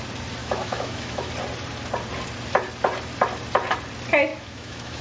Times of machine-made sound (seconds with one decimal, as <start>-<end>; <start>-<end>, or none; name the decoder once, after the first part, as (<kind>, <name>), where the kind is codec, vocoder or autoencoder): 0.4-1.3 (autoencoder, DAC-VAE); 4.3-5.0